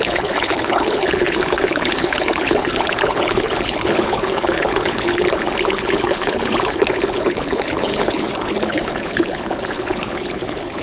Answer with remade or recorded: remade